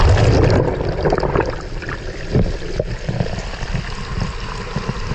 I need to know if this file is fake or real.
fake